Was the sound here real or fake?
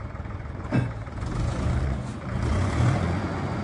fake